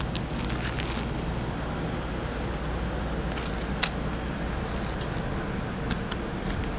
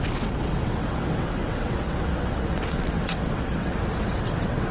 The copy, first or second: second